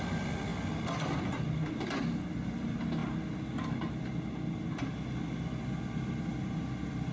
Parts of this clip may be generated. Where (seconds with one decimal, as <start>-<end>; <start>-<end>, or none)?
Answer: none